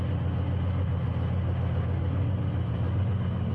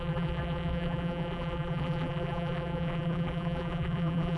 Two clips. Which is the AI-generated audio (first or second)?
second